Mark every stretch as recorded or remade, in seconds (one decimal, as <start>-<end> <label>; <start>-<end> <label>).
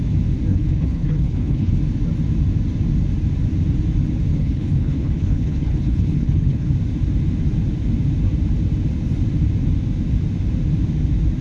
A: 0.0-0.5 recorded; 0.5-1.7 remade; 1.7-4.3 recorded; 4.3-6.7 remade; 6.7-11.4 recorded